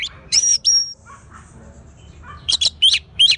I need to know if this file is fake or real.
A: fake